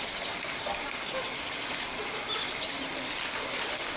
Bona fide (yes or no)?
yes